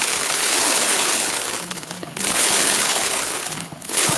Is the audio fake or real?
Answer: fake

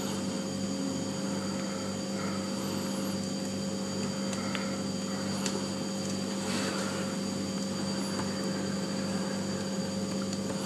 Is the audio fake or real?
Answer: real